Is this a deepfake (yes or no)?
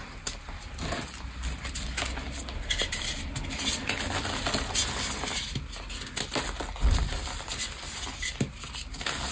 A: no